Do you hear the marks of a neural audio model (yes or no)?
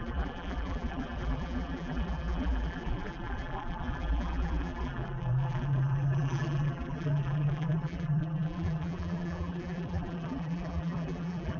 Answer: yes